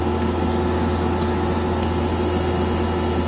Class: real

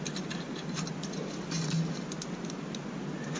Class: real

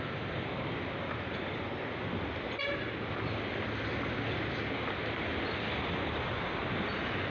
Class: real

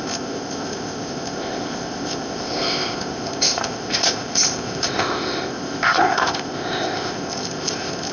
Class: fake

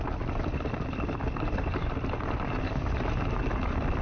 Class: real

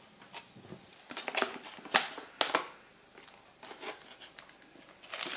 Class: real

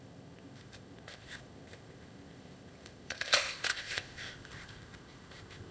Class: fake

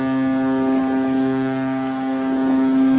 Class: real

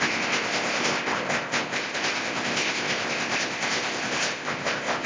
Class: fake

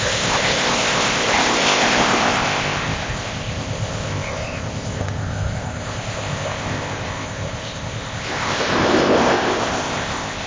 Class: fake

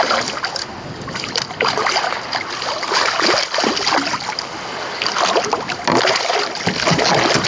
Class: real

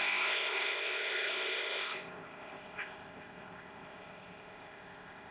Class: fake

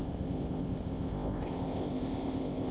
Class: fake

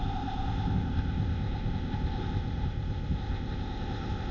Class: fake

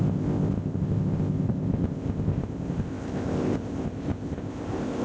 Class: fake